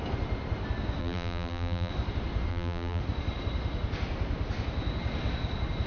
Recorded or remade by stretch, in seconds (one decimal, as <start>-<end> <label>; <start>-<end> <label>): 0.0-1.0 recorded; 1.0-1.9 remade; 1.9-2.5 recorded; 2.5-3.0 remade; 3.0-5.9 recorded